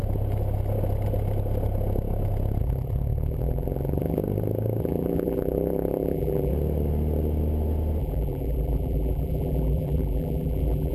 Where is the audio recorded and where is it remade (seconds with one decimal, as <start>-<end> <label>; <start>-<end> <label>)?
0.0-2.6 recorded; 2.6-4.2 remade; 4.2-4.8 recorded; 4.8-6.5 remade; 6.5-8.0 recorded; 8.0-10.9 remade